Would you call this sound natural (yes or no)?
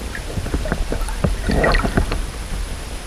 yes